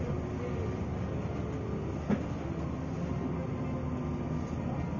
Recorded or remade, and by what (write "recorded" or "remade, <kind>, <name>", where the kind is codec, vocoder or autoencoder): recorded